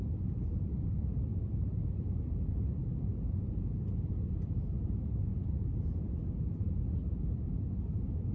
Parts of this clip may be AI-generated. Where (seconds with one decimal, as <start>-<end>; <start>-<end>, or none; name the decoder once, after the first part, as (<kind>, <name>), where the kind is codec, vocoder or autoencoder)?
0.0-3.1 (vocoder, BigVGAN v2); 4.1-8.3